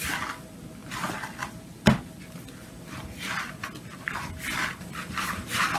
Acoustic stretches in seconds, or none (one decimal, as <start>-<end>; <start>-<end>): 0.0-5.8